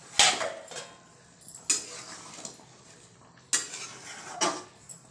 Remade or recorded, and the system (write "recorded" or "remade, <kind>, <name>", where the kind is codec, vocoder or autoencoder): recorded